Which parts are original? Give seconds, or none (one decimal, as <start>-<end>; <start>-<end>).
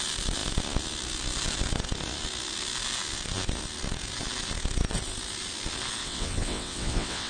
0.0-6.0